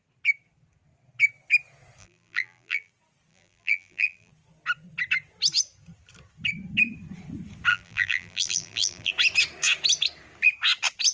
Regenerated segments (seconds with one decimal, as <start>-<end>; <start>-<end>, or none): 2.0-2.9; 3.3-4.3; 7.7-9.1